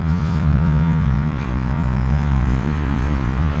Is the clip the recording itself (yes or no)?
no